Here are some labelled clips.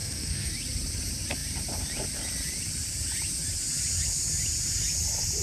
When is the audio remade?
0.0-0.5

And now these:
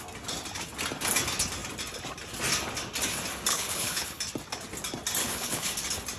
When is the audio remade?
3.5-4.2; 5.2-5.7

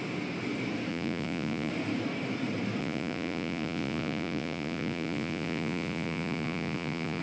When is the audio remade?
0.9-1.7; 2.8-7.2

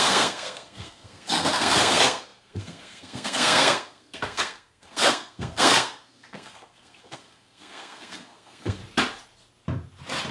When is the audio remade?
0.0-8.8

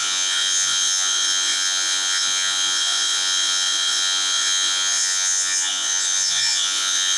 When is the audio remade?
0.0-7.2